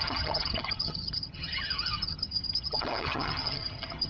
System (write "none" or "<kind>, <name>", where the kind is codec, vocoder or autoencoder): vocoder, HiFi-GAN